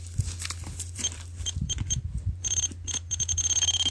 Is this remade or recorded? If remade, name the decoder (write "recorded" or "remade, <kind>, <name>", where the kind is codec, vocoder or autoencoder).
remade, vocoder, BigVGAN v2